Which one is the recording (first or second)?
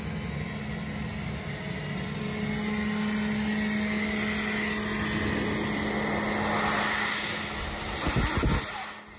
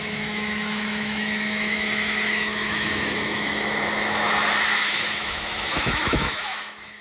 first